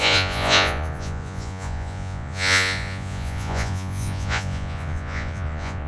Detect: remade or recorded remade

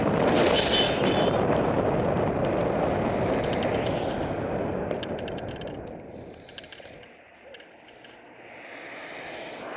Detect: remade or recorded recorded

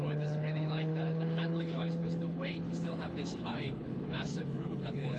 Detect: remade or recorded remade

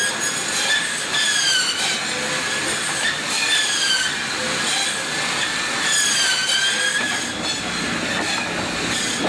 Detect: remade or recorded recorded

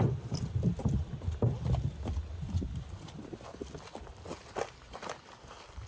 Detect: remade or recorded recorded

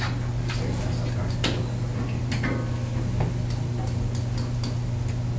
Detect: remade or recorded recorded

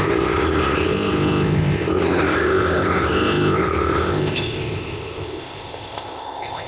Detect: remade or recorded remade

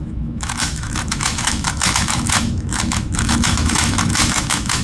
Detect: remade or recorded remade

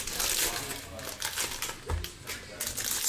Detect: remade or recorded recorded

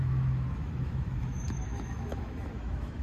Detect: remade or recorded remade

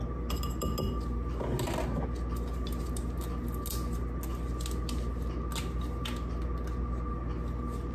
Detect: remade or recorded recorded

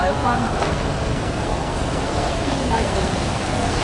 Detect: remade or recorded remade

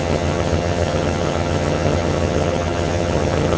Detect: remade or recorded remade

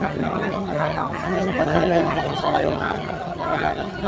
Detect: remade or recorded remade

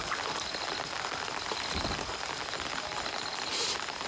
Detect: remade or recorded recorded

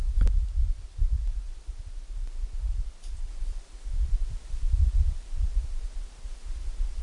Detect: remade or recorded remade